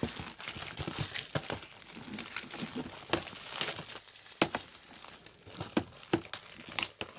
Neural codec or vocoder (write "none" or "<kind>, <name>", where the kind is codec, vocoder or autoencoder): none